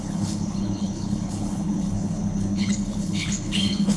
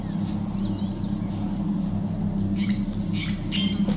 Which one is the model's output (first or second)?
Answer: first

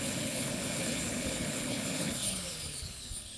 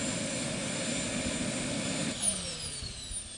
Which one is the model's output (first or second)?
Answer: first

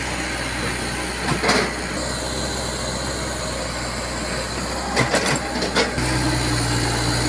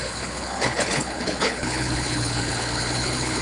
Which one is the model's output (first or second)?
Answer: second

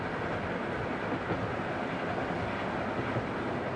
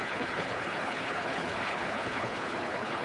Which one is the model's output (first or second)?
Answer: second